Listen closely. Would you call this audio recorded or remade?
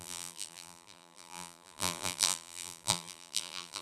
remade